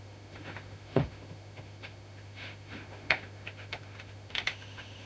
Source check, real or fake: fake